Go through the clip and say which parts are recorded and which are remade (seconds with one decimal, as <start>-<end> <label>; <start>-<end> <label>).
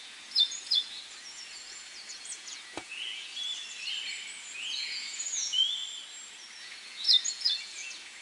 0.0-3.3 remade; 3.3-4.5 recorded; 4.5-5.6 remade; 5.6-6.6 recorded; 6.6-8.2 remade